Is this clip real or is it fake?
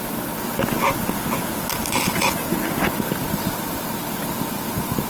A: real